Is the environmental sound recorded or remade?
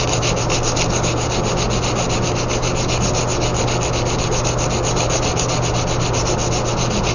recorded